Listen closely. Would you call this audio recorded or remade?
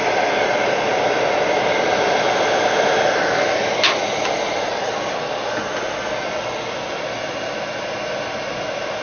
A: recorded